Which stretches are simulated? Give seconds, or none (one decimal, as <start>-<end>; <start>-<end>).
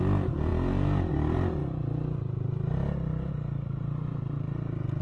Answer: none